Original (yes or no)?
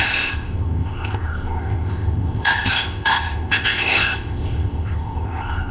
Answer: no